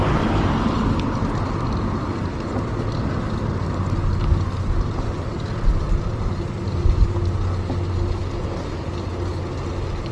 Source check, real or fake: real